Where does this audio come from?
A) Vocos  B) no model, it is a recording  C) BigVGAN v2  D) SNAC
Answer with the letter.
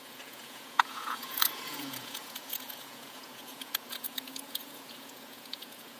A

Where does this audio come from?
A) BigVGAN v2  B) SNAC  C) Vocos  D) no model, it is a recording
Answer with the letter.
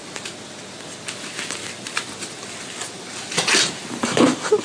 D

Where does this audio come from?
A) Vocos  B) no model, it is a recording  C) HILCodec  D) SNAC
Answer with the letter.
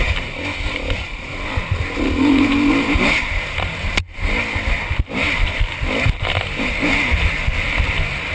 B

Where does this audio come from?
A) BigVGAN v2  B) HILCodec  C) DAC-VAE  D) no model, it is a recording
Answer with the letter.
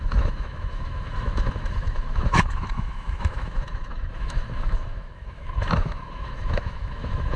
C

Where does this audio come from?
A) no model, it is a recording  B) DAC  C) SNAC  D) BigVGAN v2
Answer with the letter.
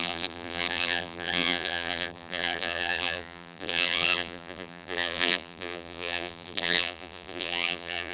D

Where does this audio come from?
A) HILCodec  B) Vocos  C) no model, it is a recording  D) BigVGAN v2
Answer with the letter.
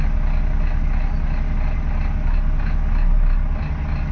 C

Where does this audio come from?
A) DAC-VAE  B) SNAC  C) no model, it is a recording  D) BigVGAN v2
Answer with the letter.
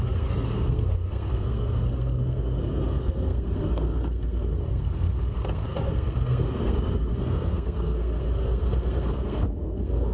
B